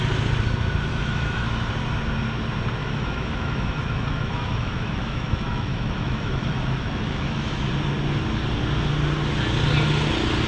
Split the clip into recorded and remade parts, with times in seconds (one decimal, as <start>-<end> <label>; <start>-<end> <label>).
0.0-0.9 recorded; 0.9-1.7 remade; 1.7-2.8 recorded; 2.8-7.7 remade; 7.7-10.5 recorded